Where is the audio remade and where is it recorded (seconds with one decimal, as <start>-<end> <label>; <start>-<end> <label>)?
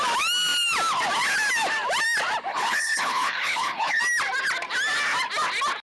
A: 0.0-2.5 recorded; 2.5-4.0 remade; 4.0-5.8 recorded